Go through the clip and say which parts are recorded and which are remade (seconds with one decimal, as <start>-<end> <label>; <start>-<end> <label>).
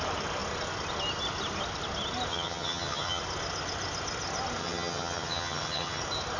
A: 0.0-2.3 recorded; 2.3-3.2 remade; 3.2-4.6 recorded; 4.6-6.0 remade; 6.0-6.4 recorded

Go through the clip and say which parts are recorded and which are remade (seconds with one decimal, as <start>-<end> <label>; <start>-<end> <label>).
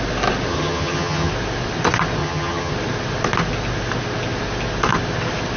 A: 0.0-0.5 recorded; 0.5-1.3 remade; 1.3-2.2 recorded; 2.2-2.7 remade; 2.7-5.6 recorded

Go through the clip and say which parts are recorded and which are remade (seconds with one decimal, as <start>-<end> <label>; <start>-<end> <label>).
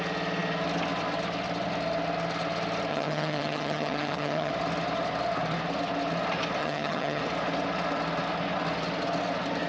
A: 0.0-2.9 recorded; 2.9-4.5 remade; 4.5-6.6 recorded; 6.6-7.2 remade; 7.2-9.7 recorded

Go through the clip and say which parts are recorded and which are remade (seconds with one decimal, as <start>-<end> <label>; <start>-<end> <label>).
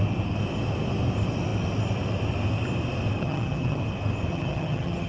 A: 0.0-3.2 recorded; 3.2-3.8 remade; 3.8-4.3 recorded; 4.3-5.1 remade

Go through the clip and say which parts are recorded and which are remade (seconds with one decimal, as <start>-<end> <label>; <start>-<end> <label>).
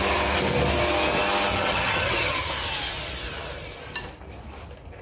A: 0.0-1.5 recorded; 1.5-2.5 remade; 2.5-5.0 recorded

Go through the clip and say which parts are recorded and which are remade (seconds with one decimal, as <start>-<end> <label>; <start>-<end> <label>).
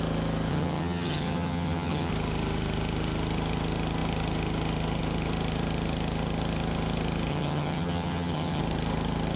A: 0.0-0.5 recorded; 0.5-2.1 remade; 2.1-7.3 recorded; 7.3-8.6 remade; 8.6-9.4 recorded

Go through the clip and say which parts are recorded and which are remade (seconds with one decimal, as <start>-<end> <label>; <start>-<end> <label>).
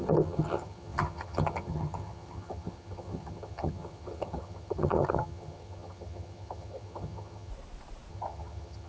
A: 0.0-7.5 remade; 7.5-8.1 recorded; 8.1-8.9 remade